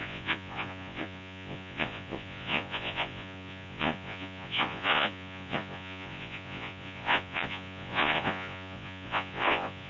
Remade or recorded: remade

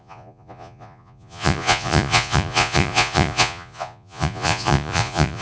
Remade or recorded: remade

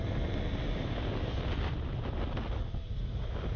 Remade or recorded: recorded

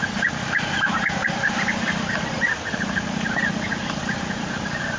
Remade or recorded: recorded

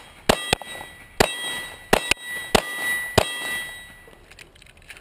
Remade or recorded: recorded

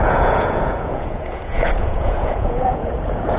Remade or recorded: remade